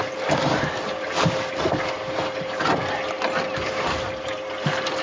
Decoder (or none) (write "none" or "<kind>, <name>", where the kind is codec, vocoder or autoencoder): none